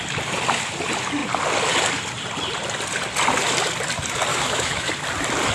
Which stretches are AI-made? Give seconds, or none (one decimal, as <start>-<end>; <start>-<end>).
4.3-4.9